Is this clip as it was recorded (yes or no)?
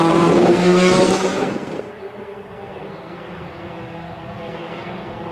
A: no